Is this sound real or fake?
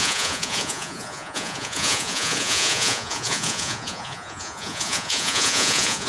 fake